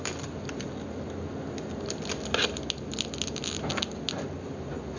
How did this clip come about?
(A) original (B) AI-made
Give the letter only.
A